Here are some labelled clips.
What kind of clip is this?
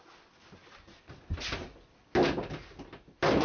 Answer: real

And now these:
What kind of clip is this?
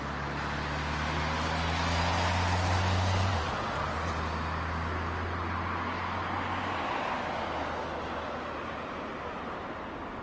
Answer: real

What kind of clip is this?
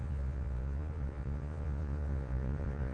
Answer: fake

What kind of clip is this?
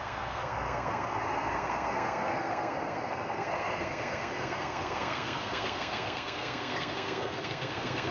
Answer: fake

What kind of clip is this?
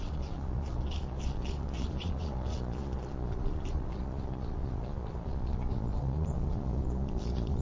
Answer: fake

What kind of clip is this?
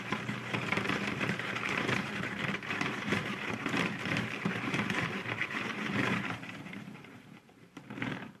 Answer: fake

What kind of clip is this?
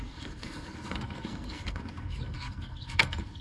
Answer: fake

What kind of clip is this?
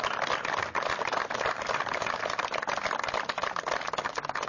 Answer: real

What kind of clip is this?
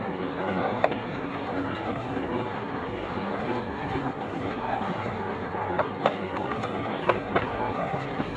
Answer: fake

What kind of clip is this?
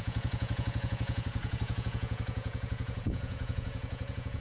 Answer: fake